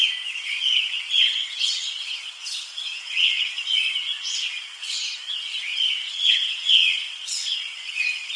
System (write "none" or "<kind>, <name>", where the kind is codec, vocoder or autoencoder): vocoder, WaveNeXt